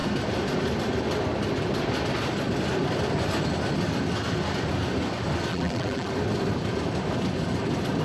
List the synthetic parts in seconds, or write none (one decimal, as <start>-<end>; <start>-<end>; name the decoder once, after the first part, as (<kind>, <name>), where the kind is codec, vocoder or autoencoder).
5.5-6.1 (vocoder, BigVGAN v2)